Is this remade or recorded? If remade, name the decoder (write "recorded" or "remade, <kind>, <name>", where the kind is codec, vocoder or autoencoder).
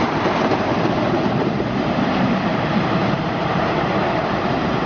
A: remade, vocoder, BigVGAN v2